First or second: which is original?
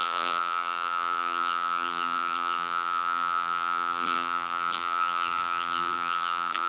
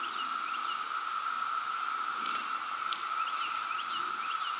second